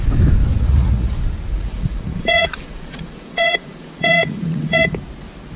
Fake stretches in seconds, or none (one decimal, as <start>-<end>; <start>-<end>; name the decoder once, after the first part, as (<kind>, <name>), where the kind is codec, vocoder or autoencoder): 0.6-1.1 (vocoder, Vocos); 1.5-4.9